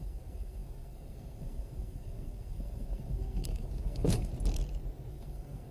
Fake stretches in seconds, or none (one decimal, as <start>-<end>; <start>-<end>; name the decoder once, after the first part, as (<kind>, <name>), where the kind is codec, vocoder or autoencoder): 0.0-4.3 (codec, SNAC); 5.1-5.7